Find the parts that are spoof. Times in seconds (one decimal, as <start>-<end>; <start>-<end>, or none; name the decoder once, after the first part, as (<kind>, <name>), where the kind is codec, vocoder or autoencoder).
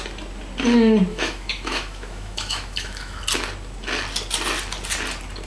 1.1-3.2 (autoencoder, DAC-VAE)